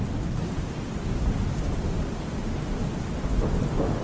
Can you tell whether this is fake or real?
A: real